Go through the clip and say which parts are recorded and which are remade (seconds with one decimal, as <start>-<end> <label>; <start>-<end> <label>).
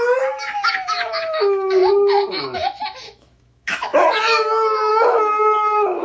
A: 0.0-1.8 remade; 1.8-2.3 recorded; 2.3-6.0 remade